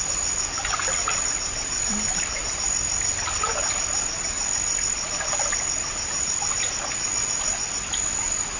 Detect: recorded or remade recorded